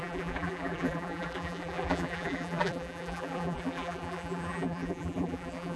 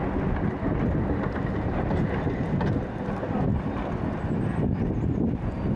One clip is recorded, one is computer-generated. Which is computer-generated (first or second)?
first